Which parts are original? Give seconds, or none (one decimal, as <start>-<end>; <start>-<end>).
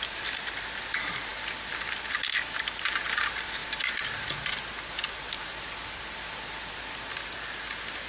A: 0.0-8.1